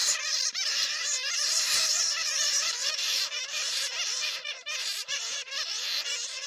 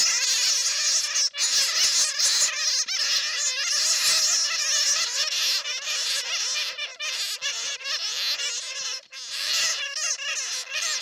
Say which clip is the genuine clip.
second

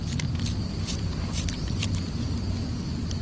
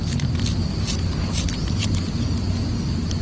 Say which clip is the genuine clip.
second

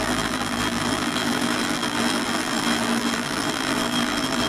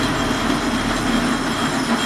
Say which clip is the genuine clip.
second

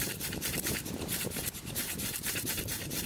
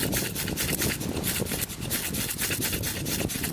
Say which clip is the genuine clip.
second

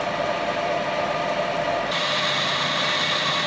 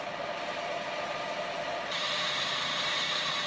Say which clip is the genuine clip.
first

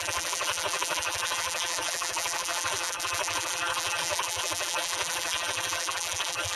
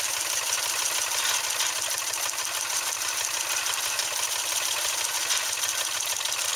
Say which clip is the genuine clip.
second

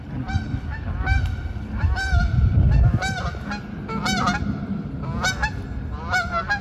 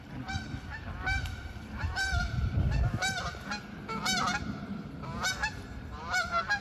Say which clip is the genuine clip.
first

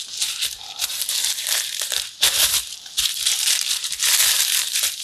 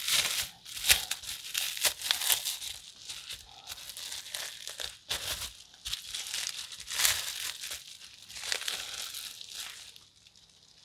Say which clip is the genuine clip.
second